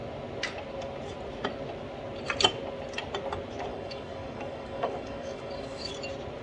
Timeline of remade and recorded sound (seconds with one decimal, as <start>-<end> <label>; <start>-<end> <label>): 0.0-3.7 recorded; 3.7-5.9 remade; 5.9-6.4 recorded

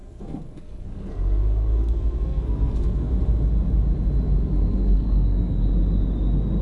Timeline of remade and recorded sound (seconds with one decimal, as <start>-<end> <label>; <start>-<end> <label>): 0.0-3.1 remade; 3.1-4.7 recorded; 4.7-5.6 remade; 5.6-6.6 recorded

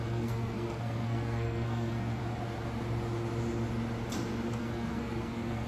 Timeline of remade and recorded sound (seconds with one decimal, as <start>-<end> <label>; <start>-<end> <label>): 0.0-2.2 remade; 2.2-4.6 recorded; 4.6-5.7 remade

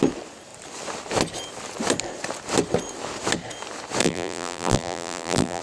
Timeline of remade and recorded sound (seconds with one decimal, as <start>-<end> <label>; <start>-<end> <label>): 0.0-4.0 recorded; 4.0-5.6 remade

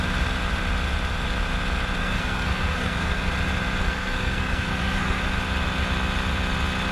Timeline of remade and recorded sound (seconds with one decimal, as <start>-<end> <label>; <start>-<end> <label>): 0.0-2.0 recorded; 2.0-3.3 remade; 3.3-3.8 recorded; 3.8-5.2 remade; 5.2-6.9 recorded

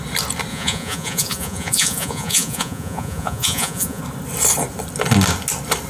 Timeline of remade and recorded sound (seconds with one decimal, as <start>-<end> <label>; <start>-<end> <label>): 0.0-0.5 recorded; 0.5-4.0 remade; 4.0-5.9 recorded

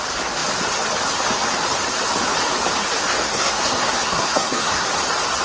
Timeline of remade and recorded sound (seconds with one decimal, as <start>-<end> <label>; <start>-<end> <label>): 0.0-3.2 recorded; 3.2-4.9 remade; 4.9-5.4 recorded